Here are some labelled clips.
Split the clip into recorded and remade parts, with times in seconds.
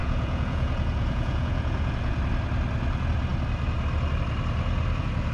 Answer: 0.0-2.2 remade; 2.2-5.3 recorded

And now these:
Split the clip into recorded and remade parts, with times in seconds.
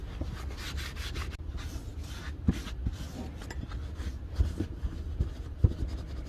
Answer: 0.0-6.3 recorded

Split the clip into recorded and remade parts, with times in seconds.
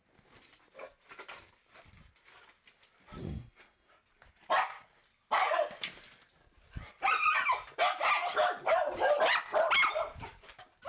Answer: 0.0-3.2 recorded; 3.2-3.9 remade; 3.9-10.9 recorded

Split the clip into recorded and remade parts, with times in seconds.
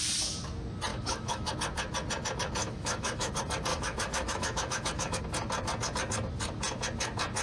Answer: 0.0-0.9 recorded; 0.9-1.5 remade; 1.5-2.6 recorded; 2.6-3.3 remade; 3.3-3.7 recorded; 3.7-5.2 remade; 5.2-7.4 recorded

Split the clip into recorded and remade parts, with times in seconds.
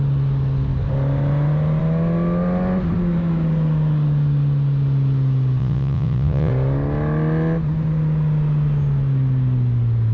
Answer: 0.0-5.6 recorded; 5.6-6.5 remade; 6.5-10.1 recorded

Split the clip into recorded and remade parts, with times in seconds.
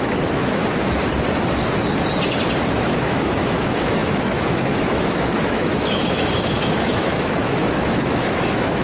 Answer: 0.0-0.6 remade; 0.6-2.7 recorded; 2.7-8.8 remade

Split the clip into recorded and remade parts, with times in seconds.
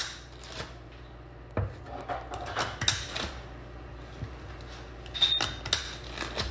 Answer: 0.0-6.5 recorded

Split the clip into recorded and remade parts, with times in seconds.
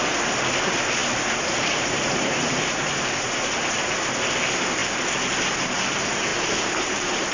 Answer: 0.0-1.0 recorded; 1.0-4.1 remade; 4.1-6.3 recorded; 6.3-7.3 remade